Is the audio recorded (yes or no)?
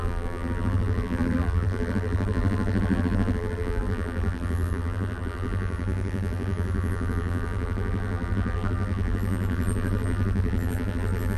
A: no